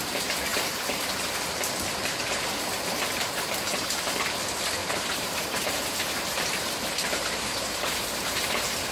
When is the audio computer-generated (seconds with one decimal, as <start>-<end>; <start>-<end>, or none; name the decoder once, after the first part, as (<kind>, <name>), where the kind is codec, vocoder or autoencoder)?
0.5-1.4 (vocoder, BigVGAN v2); 4.8-8.9